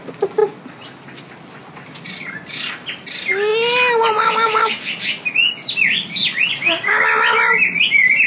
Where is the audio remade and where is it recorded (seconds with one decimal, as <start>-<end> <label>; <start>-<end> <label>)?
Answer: 0.0-8.3 recorded